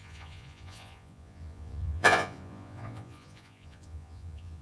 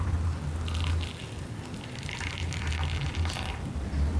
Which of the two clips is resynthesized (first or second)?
first